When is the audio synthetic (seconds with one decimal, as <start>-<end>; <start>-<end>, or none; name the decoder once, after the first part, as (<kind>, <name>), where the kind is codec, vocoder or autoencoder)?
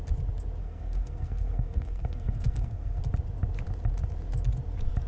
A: 0.6-3.0 (codec, SNAC)